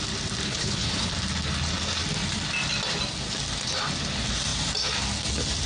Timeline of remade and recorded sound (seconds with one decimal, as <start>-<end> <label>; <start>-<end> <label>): 0.0-0.4 recorded; 0.4-1.1 remade; 1.1-5.7 recorded